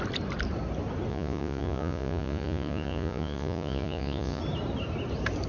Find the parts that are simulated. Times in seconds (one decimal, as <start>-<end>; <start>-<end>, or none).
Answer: 1.1-4.4